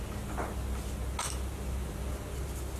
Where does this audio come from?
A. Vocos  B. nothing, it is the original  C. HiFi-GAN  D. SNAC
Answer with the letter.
B